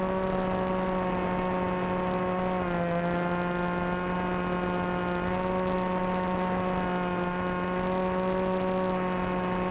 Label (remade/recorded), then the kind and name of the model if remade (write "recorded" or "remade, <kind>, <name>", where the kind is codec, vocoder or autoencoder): recorded